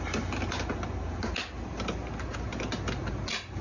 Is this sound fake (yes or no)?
no